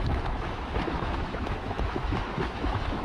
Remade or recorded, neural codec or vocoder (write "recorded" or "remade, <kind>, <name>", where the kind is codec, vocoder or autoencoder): remade, autoencoder, DAC-VAE